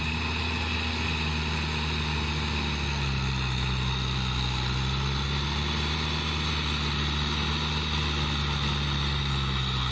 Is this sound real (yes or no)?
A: yes